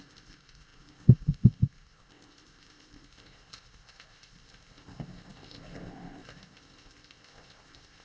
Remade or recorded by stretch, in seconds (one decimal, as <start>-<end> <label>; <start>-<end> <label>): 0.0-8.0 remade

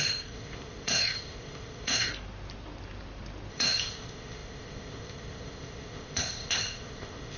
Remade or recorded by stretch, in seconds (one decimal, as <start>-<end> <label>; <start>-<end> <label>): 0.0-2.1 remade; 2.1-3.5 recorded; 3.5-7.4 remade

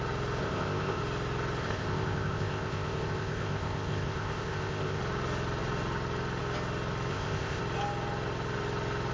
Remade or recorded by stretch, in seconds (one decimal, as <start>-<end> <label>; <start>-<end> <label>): 0.0-0.4 recorded; 0.4-1.0 remade; 1.0-1.6 recorded; 1.6-5.0 remade; 5.0-7.1 recorded; 7.1-7.6 remade; 7.6-9.1 recorded